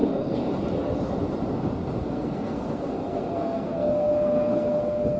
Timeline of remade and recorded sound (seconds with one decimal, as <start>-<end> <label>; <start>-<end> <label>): 0.0-0.5 remade; 0.5-2.0 recorded; 2.0-5.2 remade